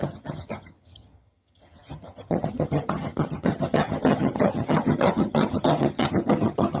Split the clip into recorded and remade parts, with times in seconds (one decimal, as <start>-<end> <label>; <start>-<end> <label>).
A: 0.0-6.8 remade